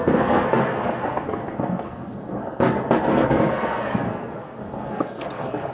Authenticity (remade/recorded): remade